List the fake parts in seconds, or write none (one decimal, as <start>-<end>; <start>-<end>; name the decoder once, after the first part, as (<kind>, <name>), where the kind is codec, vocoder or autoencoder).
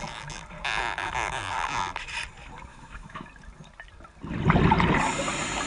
2.7-3.3 (autoencoder, DAC-VAE)